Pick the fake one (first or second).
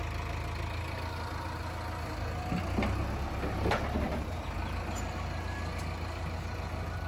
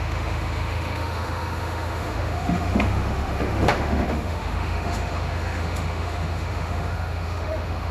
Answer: second